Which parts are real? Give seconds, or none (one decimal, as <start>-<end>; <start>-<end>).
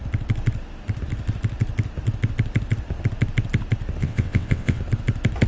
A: 0.0-4.0; 4.8-5.5